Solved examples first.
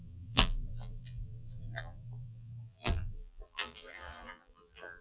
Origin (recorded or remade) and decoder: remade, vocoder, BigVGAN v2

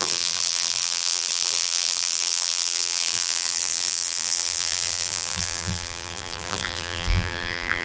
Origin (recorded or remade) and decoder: remade, vocoder, BigVGAN v2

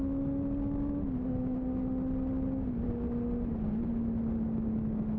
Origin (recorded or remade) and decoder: recorded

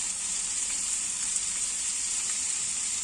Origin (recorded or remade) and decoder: remade, vocoder, BigVGAN v2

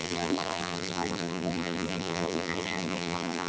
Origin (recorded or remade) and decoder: remade, vocoder, BigVGAN v2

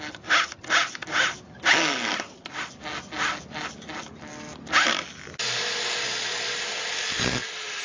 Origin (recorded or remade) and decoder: recorded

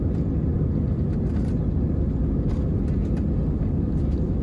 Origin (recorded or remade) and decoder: recorded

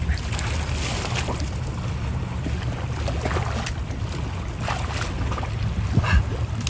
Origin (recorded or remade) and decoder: recorded